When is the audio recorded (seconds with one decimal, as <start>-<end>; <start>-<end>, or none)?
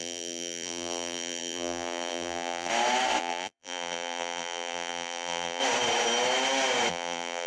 2.7-3.2; 5.6-6.9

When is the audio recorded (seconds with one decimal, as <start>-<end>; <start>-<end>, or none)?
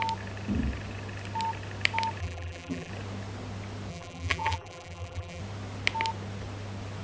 0.0-2.2; 2.9-3.9; 5.4-7.0